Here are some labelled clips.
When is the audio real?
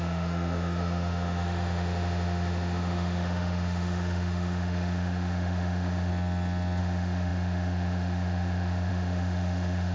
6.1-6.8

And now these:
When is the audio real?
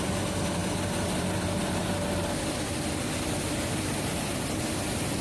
0.0-5.2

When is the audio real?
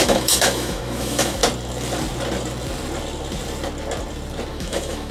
1.4-4.5